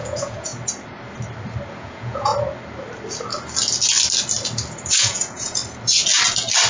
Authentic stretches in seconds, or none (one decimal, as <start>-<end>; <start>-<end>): 0.5-1.7; 2.3-4.9; 5.6-6.7